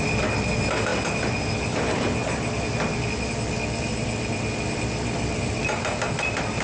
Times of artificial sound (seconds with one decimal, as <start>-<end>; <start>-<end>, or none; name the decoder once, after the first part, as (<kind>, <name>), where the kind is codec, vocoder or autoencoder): none